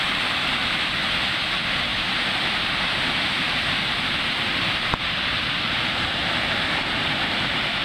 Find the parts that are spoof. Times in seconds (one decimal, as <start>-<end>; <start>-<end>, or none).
0.0-1.0; 1.5-7.8